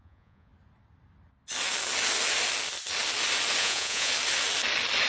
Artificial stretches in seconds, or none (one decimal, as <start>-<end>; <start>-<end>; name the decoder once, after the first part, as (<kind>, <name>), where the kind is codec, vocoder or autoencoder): 0.0-0.5 (vocoder, Vocos); 3.6-4.1